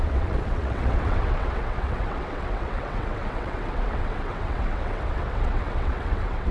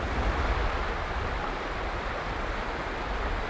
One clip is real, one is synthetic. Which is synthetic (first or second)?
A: first